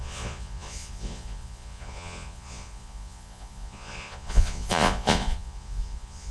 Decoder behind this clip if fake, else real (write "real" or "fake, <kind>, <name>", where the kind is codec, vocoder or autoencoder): fake, vocoder, Vocos